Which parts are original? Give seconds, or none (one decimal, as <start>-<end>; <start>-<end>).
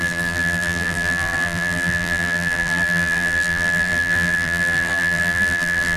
none